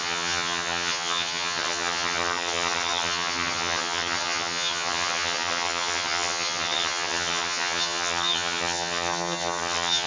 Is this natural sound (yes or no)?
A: no